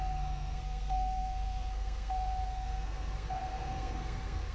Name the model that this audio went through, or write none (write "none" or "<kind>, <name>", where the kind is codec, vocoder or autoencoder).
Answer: codec, SNAC